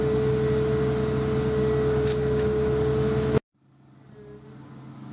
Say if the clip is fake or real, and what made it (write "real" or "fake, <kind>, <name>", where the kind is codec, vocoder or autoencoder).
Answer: real